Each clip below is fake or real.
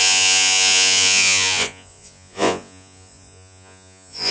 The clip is fake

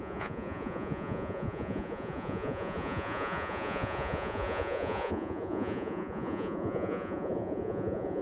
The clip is fake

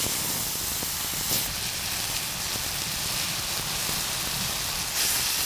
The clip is real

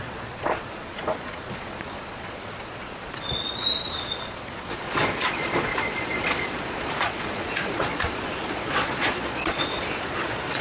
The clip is fake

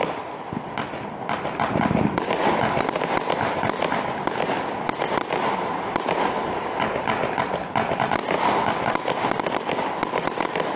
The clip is real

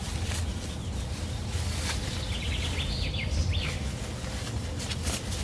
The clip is real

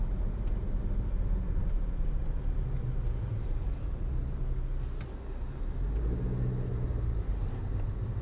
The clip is real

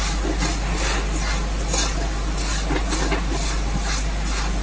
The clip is real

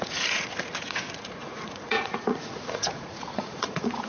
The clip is fake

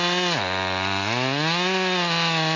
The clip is real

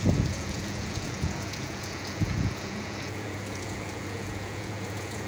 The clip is fake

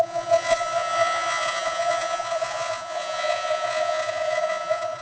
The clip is fake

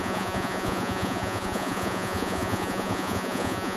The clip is fake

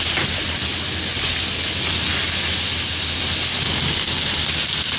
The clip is real